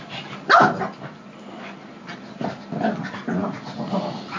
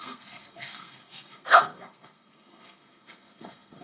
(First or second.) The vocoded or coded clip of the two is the second